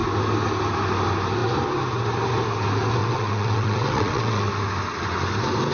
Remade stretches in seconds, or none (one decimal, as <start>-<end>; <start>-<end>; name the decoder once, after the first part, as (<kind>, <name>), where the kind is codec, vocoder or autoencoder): 3.0-4.5 (vocoder, WaveNeXt)